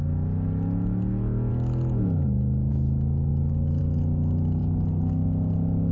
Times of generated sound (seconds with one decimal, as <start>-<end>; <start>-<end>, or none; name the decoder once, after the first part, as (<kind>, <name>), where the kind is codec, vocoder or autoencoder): none